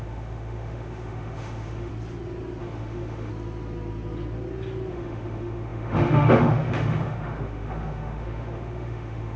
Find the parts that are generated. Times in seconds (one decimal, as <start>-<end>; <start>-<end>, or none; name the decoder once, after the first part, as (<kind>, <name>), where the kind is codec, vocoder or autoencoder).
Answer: 0.0-1.9 (autoencoder, DAC-VAE); 2.6-3.3; 4.9-9.4